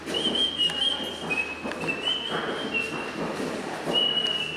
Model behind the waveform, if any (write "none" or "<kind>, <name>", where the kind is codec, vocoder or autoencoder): none